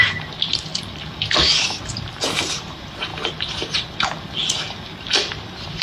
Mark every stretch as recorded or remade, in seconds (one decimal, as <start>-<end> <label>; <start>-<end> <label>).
0.0-0.7 remade; 0.7-2.1 recorded; 2.1-3.1 remade; 3.1-5.0 recorded; 5.0-5.8 remade